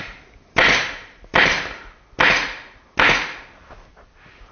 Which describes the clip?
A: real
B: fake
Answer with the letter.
A